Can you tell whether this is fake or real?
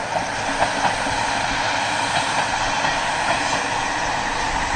real